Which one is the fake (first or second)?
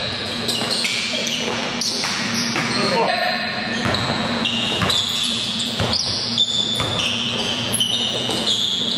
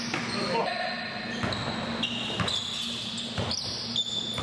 first